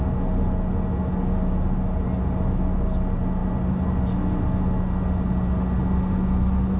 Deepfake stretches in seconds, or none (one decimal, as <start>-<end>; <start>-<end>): none